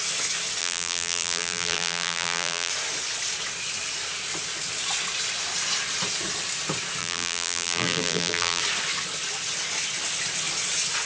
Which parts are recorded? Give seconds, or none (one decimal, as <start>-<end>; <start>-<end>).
0.0-0.6; 2.7-7.0; 8.6-11.1